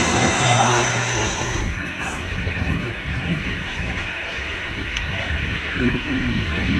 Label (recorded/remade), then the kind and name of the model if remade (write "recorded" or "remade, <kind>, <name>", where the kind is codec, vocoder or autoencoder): remade, codec, SNAC